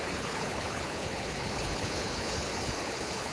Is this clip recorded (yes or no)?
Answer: no